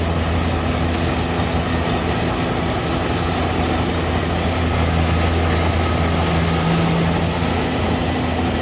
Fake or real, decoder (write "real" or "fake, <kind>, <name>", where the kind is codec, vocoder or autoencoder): real